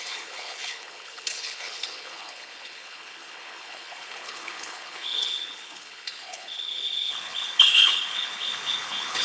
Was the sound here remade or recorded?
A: remade